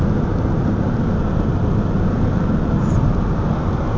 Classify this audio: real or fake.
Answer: real